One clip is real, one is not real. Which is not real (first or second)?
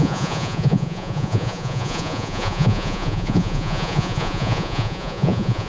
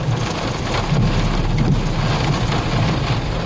first